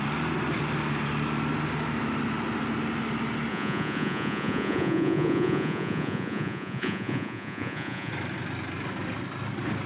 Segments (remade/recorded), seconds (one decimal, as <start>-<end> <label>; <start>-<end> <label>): 0.0-3.5 recorded; 3.5-8.1 remade; 8.1-9.9 recorded